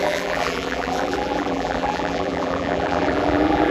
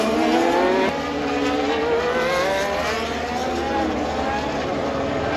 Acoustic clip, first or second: second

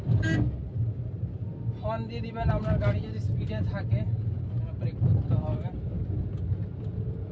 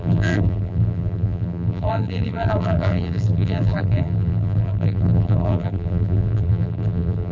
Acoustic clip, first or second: first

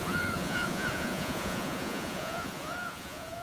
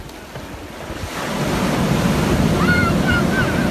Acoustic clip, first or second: second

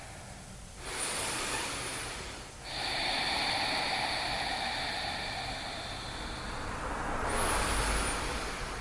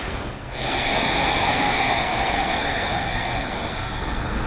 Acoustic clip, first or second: first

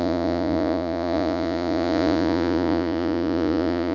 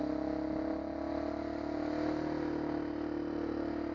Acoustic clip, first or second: second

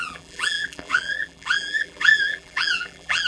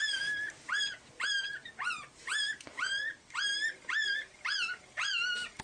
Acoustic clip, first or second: second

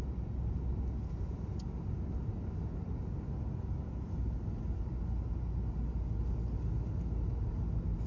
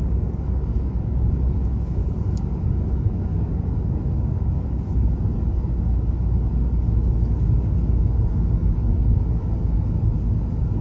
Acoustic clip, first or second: first